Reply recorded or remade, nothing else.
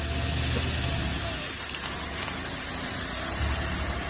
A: recorded